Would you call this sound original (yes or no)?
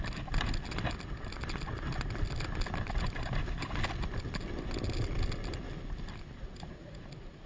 yes